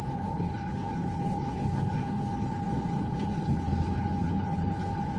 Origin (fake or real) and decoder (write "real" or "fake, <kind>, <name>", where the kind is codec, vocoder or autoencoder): fake, codec, HILCodec